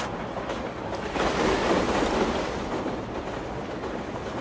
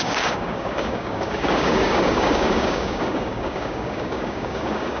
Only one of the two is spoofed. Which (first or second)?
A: second